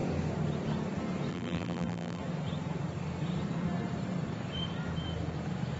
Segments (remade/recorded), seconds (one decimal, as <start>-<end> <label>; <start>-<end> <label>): 0.0-1.3 recorded; 1.3-2.2 remade; 2.2-5.8 recorded